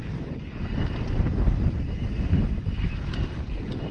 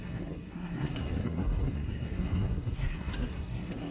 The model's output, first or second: second